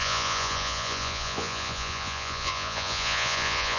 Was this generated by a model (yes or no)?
yes